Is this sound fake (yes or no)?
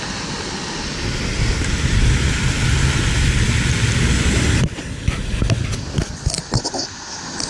no